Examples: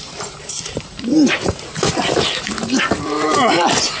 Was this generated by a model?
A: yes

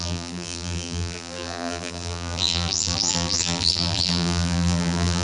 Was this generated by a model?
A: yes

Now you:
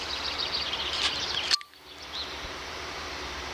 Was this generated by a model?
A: no